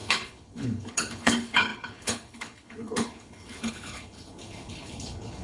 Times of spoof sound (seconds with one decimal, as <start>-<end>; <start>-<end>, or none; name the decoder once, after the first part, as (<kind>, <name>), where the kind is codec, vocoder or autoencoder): 0.0-5.4 (codec, HILCodec)